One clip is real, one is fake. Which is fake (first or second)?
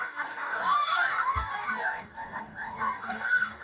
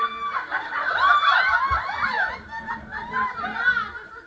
first